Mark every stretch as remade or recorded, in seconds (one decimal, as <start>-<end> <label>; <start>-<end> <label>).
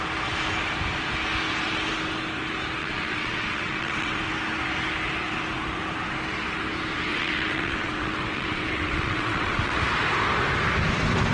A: 0.0-2.8 recorded; 2.8-4.2 remade; 4.2-7.1 recorded; 7.1-9.8 remade; 9.8-11.3 recorded